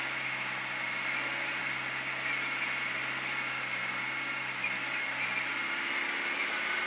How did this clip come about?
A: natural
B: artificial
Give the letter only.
A